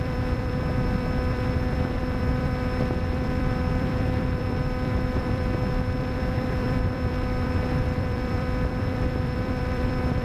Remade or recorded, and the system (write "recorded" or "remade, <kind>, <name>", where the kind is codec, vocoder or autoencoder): remade, vocoder, BigVGAN v2